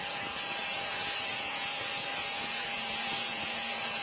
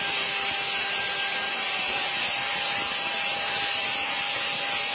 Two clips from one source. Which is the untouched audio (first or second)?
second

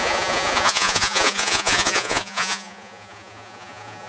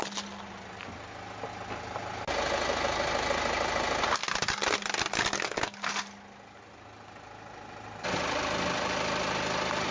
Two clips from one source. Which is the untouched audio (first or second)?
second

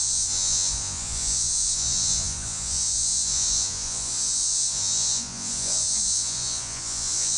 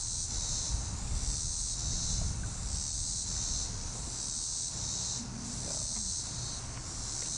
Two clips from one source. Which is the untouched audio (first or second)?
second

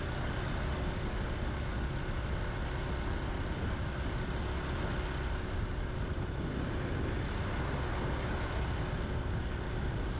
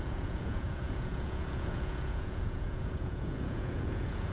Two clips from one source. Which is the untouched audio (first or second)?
first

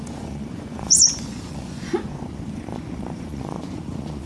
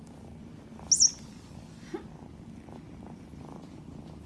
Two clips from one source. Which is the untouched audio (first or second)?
second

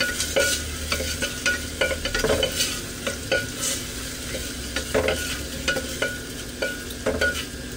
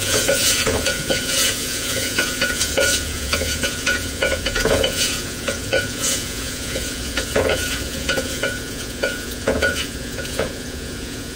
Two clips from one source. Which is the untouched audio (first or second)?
first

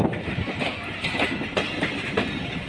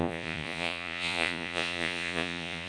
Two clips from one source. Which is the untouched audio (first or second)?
first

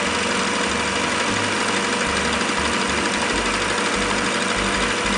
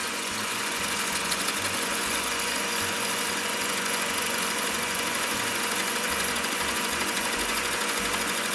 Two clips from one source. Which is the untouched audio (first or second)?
first